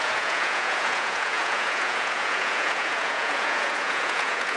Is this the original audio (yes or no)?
no